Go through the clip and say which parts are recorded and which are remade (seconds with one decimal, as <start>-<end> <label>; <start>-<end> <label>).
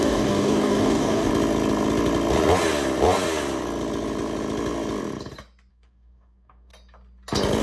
0.0-1.3 remade; 1.3-5.7 recorded; 5.7-6.7 remade; 6.7-7.6 recorded